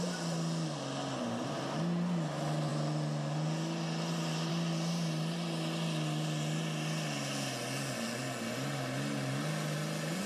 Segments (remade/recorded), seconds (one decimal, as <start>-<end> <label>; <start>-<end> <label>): 0.0-10.3 recorded